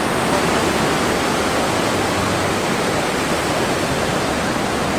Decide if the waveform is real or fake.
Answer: real